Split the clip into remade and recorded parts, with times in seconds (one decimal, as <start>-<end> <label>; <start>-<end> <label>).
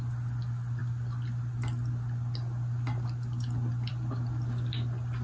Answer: 0.0-5.2 recorded